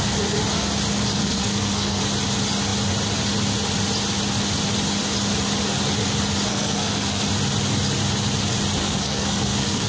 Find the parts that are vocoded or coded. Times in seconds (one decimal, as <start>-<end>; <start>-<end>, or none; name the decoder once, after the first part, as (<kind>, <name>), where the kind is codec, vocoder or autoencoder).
1.2-2.0 (codec, SNAC); 6.5-7.2; 8.8-9.9